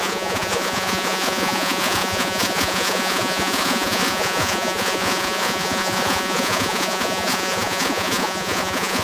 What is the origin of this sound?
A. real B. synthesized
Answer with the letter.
B